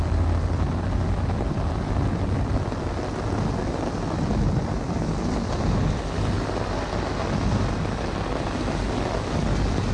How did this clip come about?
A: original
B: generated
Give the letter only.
A